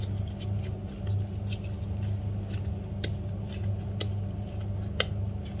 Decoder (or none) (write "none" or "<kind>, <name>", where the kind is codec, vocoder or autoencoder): none